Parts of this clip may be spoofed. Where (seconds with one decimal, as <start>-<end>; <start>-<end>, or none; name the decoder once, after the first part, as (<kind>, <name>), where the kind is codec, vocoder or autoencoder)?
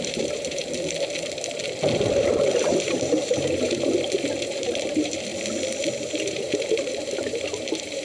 0.0-0.6 (vocoder, BigVGAN v2); 2.1-5.3; 6.3-8.0